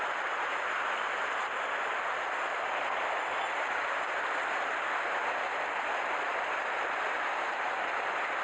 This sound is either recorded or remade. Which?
recorded